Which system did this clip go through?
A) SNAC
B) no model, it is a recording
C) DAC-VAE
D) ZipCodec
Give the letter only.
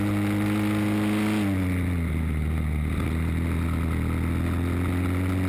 B